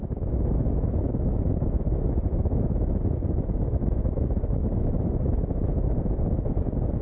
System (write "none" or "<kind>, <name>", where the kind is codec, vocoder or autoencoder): autoencoder, DAC-VAE